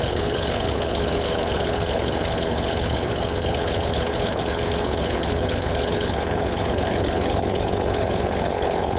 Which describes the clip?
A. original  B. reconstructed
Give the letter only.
B